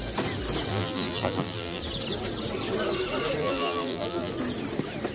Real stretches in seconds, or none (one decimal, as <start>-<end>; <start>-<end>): 0.0-0.7; 1.8-3.4; 4.3-5.1